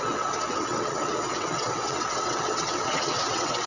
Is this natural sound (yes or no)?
no